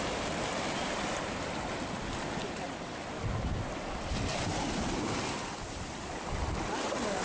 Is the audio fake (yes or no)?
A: no